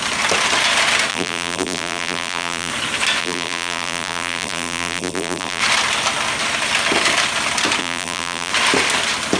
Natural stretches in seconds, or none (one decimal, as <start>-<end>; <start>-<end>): 0.0-1.1; 2.7-3.2; 5.6-7.8; 8.5-9.4